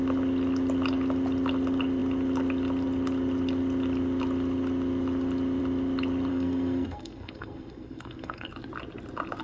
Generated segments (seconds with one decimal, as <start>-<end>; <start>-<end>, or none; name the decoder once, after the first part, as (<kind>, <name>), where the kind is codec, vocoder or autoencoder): 6.3-8.5 (codec, SNAC)